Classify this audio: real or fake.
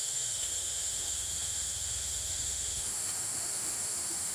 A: fake